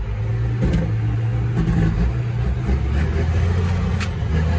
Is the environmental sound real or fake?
real